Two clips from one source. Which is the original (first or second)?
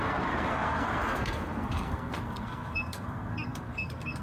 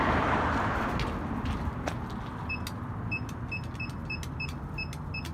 second